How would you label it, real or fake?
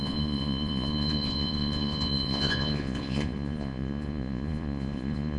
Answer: fake